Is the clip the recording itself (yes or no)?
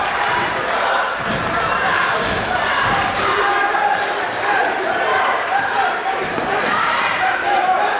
no